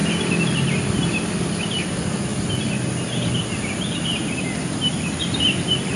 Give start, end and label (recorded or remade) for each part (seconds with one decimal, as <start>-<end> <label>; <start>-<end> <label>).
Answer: 0.0-2.3 remade; 2.3-4.4 recorded; 4.4-6.0 remade